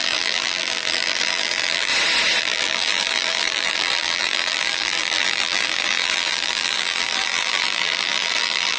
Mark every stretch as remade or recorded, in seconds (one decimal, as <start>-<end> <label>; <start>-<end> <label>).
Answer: 0.0-1.9 remade; 1.9-2.4 recorded; 2.4-8.8 remade